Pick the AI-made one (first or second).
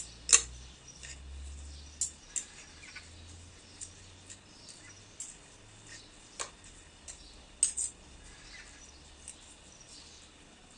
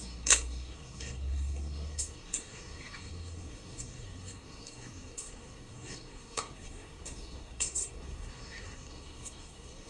second